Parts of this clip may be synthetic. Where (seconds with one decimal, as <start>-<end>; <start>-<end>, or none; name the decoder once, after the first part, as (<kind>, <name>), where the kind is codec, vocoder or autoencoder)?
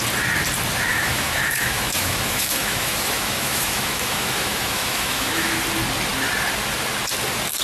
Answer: 0.9-5.5 (autoencoder, DAC-VAE)